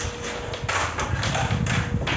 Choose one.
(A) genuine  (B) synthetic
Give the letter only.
A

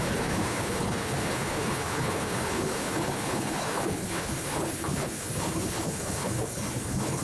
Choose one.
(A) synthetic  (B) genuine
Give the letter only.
A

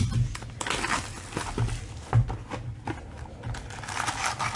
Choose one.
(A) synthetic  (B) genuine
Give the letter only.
B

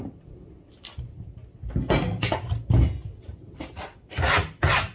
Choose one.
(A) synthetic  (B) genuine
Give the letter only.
B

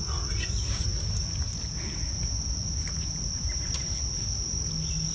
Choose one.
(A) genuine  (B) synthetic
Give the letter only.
A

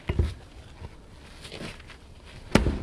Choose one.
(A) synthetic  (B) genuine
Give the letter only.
A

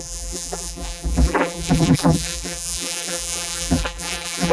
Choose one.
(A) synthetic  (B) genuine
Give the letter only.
A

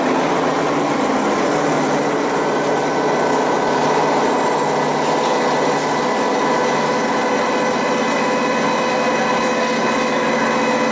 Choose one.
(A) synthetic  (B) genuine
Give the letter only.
B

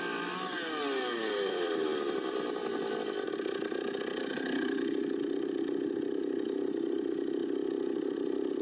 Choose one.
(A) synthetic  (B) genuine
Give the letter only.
B